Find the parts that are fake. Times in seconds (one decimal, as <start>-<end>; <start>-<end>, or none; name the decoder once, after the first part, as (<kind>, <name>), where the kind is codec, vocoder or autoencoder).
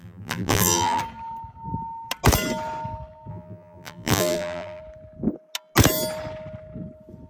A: 0.0-1.0 (vocoder, BigVGAN v2); 3.3-4.8